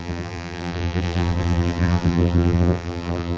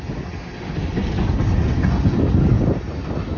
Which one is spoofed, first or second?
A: first